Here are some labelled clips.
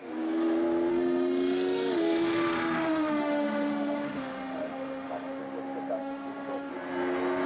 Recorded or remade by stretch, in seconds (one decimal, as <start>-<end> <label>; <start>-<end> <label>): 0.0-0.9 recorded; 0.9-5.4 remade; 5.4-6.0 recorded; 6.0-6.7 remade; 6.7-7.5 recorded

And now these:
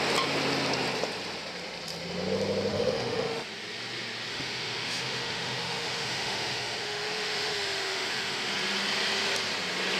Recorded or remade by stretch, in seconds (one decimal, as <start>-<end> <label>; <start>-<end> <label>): 0.0-2.7 recorded; 2.7-3.5 remade; 3.5-4.3 recorded; 4.3-8.5 remade; 8.5-10.0 recorded

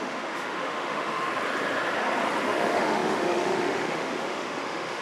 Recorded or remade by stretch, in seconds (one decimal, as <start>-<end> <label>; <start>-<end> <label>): 0.0-1.3 remade; 1.3-2.4 recorded; 2.4-5.0 remade

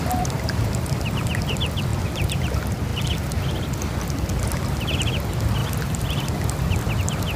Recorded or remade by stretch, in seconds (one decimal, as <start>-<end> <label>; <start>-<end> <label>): 0.0-7.4 recorded